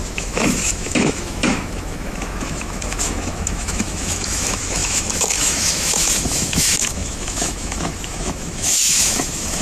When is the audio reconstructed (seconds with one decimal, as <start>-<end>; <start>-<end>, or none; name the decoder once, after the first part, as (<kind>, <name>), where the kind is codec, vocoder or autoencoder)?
0.0-9.6 (autoencoder, DAC-VAE)